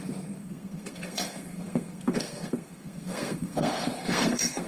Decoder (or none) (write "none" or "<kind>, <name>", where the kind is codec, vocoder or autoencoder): codec, SNAC